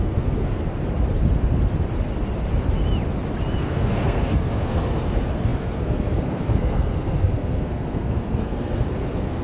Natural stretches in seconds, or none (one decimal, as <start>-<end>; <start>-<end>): 0.6-3.6